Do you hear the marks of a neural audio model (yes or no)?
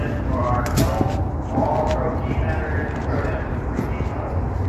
no